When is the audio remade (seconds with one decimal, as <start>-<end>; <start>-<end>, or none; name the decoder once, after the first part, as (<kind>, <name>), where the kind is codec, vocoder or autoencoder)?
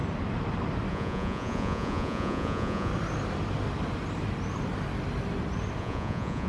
0.9-2.9 (vocoder, Vocos); 5.8-6.5